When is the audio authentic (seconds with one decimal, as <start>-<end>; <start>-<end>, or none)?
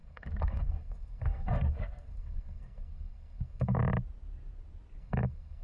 3.8-5.0